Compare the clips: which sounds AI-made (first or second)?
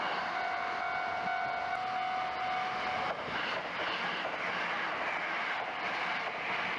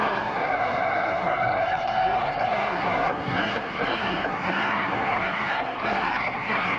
second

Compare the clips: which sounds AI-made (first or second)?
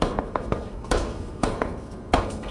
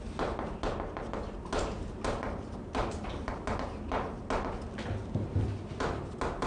first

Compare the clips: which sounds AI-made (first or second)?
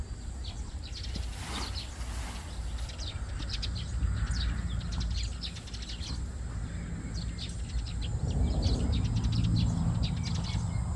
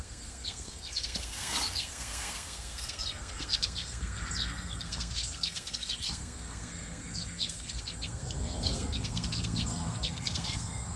second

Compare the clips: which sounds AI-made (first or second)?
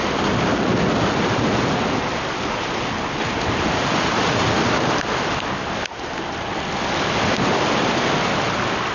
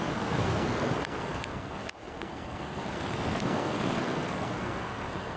second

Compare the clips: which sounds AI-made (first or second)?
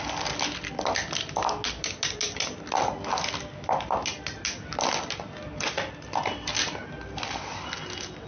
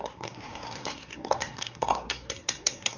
second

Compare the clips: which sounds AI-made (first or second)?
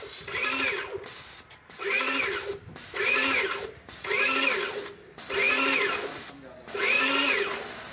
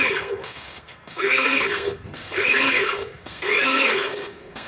second